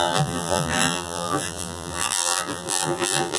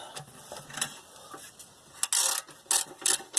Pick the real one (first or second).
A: second